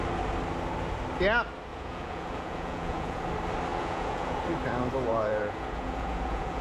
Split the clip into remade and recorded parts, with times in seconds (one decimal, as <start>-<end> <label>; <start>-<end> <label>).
0.0-1.7 recorded; 1.7-3.2 remade; 3.2-3.7 recorded; 3.7-4.4 remade; 4.4-5.1 recorded; 5.1-6.6 remade